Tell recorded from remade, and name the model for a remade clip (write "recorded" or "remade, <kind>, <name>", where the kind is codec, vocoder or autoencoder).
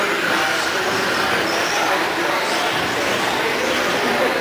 recorded